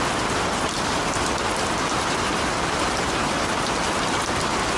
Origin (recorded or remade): recorded